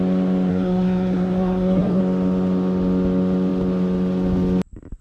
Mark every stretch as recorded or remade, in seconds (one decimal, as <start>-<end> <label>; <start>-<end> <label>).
0.0-0.5 recorded; 0.5-2.0 remade; 2.0-5.0 recorded